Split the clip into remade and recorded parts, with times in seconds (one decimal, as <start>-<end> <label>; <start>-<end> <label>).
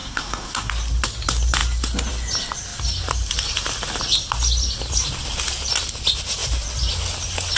0.0-0.7 remade; 0.7-7.6 recorded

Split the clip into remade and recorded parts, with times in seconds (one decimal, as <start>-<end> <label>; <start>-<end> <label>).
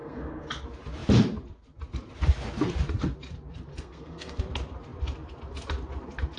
0.0-0.5 remade; 0.5-3.7 recorded; 3.7-4.4 remade; 4.4-6.4 recorded